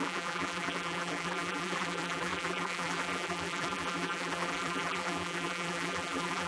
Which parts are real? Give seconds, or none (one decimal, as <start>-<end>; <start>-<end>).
none